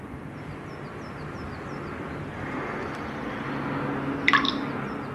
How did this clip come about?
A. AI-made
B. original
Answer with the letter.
B